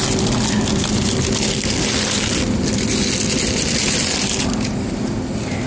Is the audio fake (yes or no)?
no